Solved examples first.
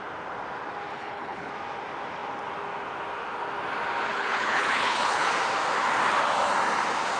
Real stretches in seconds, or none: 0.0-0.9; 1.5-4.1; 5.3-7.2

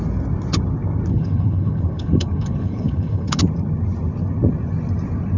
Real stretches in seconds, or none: 0.0-1.1; 3.4-5.4

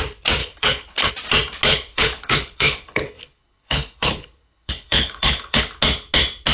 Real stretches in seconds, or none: 0.0-0.4; 1.1-1.7; 5.6-6.5

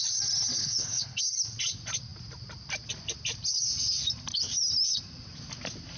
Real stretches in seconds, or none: 0.0-0.6; 1.2-6.0

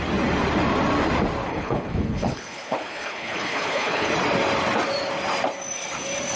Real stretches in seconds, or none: 0.0-1.5; 4.1-6.4